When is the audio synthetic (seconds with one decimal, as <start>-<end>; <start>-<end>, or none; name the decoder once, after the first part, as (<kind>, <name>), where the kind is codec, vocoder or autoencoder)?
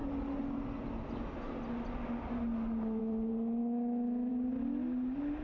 3.6-4.3 (autoencoder, DAC-VAE)